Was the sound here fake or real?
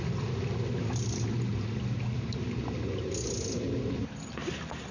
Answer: real